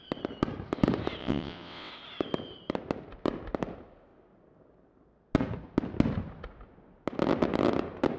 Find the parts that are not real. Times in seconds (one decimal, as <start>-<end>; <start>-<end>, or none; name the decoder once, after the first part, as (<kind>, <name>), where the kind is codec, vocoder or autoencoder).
1.2-1.9 (vocoder, WaveNeXt)